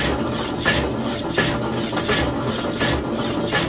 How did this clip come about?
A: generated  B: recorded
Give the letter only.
B